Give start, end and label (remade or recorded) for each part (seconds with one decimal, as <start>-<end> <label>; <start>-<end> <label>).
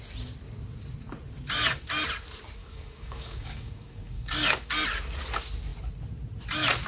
0.0-2.6 recorded; 2.6-4.7 remade; 4.7-6.9 recorded